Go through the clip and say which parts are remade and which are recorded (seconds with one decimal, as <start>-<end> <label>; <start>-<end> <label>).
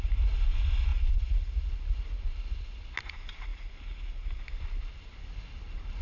0.0-6.0 recorded